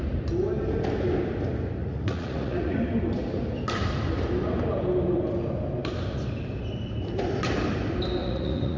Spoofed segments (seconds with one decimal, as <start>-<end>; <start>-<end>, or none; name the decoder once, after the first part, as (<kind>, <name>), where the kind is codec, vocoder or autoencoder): 1.8-2.8 (vocoder, Vocos); 8.2-8.8